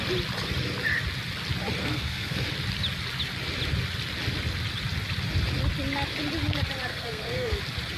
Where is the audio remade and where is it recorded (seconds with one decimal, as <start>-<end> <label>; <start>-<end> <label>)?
0.0-1.8 recorded; 1.8-2.5 remade; 2.5-6.9 recorded; 6.9-7.6 remade; 7.6-8.0 recorded